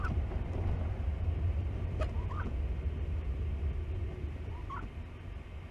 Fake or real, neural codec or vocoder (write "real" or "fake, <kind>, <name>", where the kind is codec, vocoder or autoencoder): real